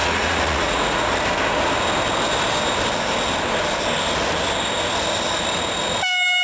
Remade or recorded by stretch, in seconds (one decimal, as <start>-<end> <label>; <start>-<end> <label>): 0.0-1.1 remade; 1.1-6.4 recorded